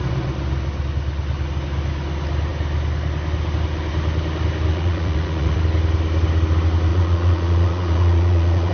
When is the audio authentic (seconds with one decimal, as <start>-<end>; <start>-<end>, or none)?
0.0-4.7; 5.6-6.9